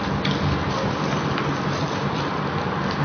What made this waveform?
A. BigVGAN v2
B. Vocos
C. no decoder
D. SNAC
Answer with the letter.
C